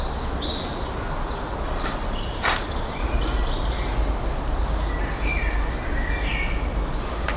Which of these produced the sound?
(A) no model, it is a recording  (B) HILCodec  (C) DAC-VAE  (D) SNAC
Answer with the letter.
A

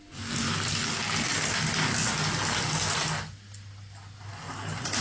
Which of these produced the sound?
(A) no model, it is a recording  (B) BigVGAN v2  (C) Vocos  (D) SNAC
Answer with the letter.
A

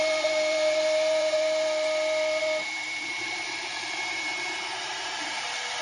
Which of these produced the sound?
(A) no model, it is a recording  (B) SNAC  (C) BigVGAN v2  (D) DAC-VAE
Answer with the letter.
C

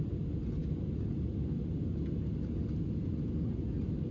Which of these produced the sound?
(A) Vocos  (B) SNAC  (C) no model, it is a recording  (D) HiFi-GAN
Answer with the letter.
C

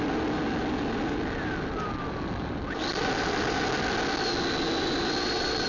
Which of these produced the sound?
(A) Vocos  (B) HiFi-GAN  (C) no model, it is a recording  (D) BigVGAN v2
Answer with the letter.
C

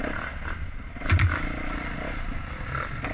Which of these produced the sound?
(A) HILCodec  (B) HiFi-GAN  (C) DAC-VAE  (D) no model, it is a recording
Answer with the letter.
D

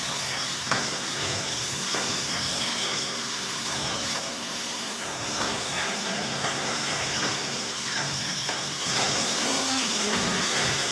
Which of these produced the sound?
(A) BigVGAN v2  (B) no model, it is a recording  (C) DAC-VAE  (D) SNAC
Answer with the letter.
D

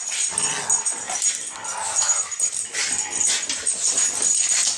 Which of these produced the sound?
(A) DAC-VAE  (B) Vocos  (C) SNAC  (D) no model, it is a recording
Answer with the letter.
D